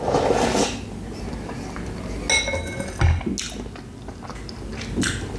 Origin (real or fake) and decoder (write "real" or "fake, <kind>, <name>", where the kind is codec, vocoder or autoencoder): real